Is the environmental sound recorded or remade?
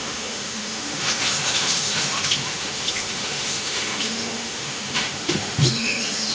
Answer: remade